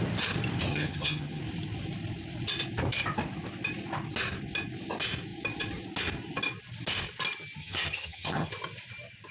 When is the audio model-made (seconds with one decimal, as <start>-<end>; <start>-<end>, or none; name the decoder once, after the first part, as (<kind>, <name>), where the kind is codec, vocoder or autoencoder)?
0.7-1.4 (vocoder, HiFi-GAN); 7.6-8.5